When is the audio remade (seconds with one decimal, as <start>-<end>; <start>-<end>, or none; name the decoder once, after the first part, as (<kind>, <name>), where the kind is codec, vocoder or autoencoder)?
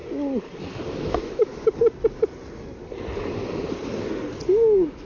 0.9-1.5 (autoencoder, DAC-VAE); 4.5-5.1